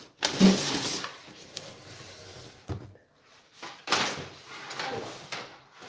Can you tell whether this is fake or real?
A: real